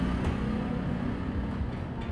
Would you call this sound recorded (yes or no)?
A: no